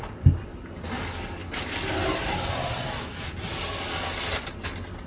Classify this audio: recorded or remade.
recorded